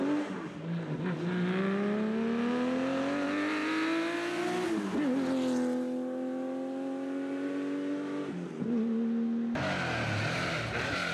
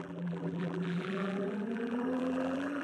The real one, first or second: first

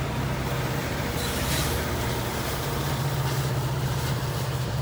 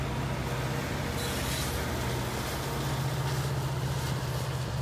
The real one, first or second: second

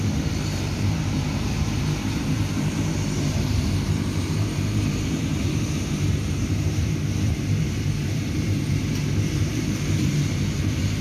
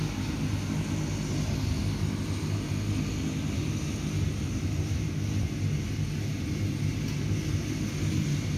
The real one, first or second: second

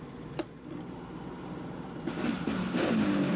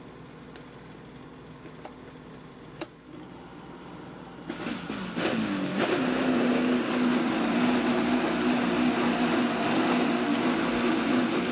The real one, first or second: second